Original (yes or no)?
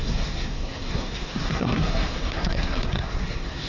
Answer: no